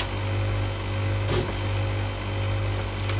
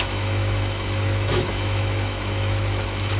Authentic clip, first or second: first